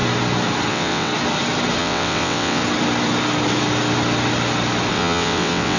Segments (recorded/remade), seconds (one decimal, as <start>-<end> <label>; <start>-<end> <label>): 0.0-0.7 recorded; 0.7-1.1 remade; 1.1-1.8 recorded; 1.8-2.6 remade; 2.6-4.9 recorded; 4.9-5.8 remade